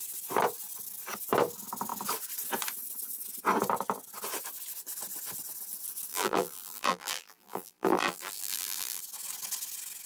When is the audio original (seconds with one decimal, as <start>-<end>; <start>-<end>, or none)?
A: 0.0-6.1; 9.0-10.1

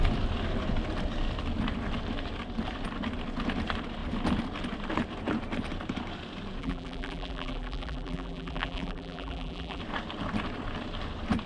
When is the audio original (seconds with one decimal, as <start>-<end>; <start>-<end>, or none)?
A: 0.0-6.6; 9.8-11.5